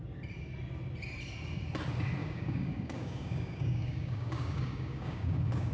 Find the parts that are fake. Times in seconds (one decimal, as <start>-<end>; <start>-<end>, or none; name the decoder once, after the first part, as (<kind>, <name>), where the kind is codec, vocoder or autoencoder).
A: 2.2-5.7 (codec, DAC)